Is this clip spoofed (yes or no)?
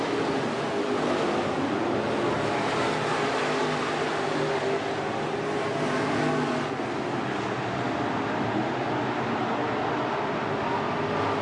no